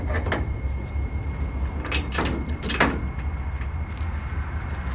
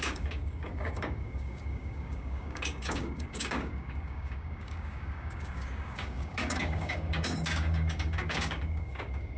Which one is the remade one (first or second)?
second